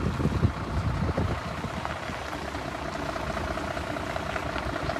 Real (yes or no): yes